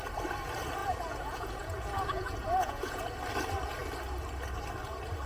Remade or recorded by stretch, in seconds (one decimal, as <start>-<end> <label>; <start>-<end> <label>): 0.0-0.8 recorded; 0.8-3.0 remade; 3.0-5.3 recorded